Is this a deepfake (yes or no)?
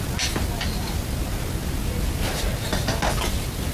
no